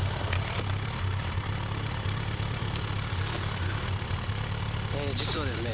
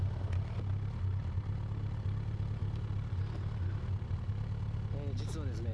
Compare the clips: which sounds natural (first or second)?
second